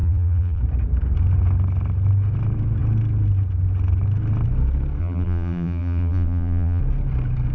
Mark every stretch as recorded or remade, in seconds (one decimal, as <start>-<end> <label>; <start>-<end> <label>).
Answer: 0.0-0.6 remade; 0.6-5.0 recorded; 5.0-6.8 remade; 6.8-7.5 recorded